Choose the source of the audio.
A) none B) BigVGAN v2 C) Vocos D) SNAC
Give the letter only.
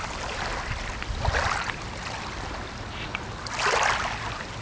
A